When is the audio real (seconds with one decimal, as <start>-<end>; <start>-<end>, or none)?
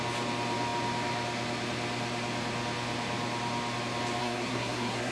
0.0-4.2